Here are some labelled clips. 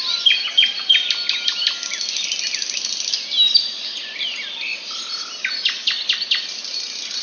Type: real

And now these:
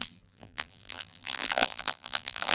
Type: fake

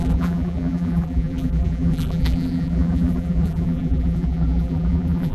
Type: fake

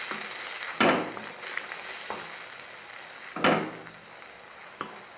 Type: real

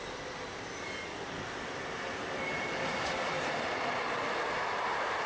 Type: real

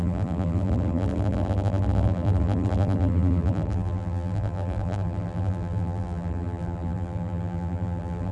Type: fake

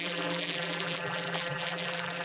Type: fake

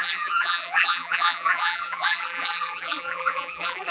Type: fake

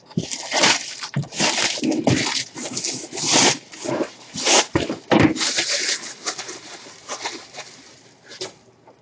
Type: fake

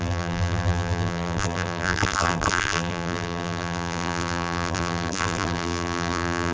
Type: fake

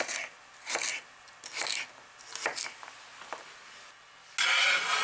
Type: real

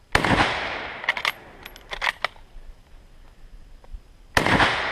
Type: real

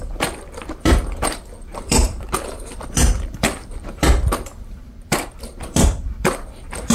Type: fake